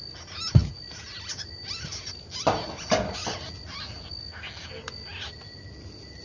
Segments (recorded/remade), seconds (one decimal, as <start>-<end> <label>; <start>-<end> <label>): 0.0-6.2 recorded